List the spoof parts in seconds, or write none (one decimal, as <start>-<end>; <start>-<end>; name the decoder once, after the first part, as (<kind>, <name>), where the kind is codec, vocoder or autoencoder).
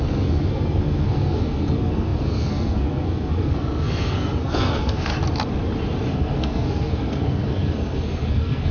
0.0-5.1 (codec, SNAC); 6.1-8.7